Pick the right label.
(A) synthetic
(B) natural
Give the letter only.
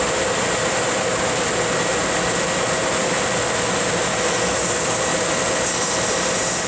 B